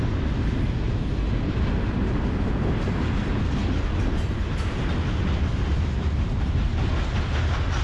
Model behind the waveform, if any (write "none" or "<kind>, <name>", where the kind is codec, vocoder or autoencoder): none